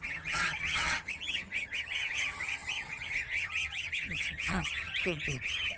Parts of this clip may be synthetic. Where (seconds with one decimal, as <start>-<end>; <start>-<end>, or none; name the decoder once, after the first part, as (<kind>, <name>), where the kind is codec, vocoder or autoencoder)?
0.0-5.8 (vocoder, HiFi-GAN)